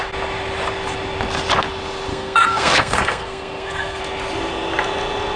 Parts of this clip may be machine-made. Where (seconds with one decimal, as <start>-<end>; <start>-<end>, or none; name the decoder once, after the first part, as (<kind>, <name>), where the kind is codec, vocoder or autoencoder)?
2.1-4.0 (codec, SNAC)